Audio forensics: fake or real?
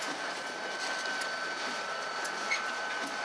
real